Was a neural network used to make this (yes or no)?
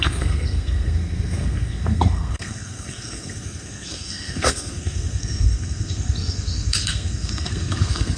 yes